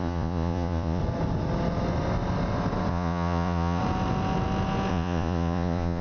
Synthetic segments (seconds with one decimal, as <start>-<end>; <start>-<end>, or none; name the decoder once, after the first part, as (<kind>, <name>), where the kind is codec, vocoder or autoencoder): 0.0-1.0 (vocoder, Vocos); 2.9-3.8; 4.9-6.0